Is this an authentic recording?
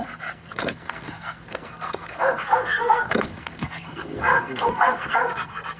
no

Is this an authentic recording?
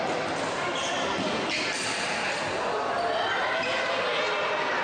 yes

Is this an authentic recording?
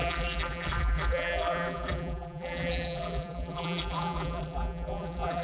no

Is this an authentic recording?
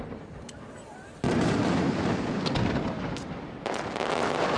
yes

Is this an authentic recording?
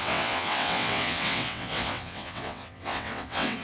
no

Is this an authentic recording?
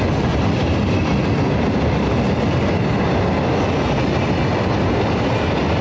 yes